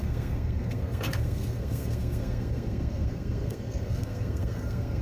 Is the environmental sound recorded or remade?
remade